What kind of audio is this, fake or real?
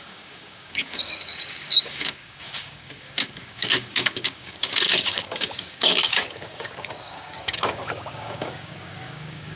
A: fake